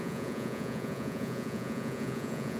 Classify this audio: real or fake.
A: fake